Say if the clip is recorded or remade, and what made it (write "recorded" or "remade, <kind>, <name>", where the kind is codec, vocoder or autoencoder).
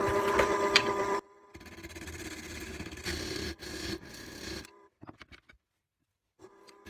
remade, vocoder, BigVGAN v2